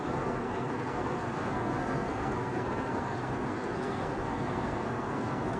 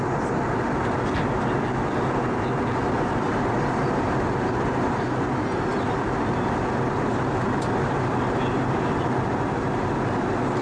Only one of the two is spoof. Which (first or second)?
first